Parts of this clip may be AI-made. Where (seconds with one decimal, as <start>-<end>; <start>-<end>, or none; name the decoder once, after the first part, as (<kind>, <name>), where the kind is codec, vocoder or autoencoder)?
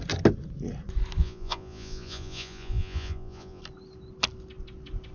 1.2-3.6 (vocoder, Vocos)